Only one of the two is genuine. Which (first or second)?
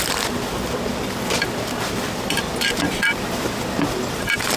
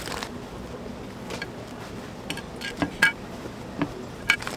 second